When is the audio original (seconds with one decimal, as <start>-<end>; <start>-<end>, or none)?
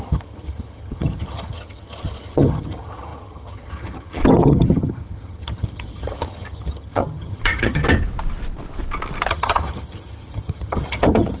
7.8-9.3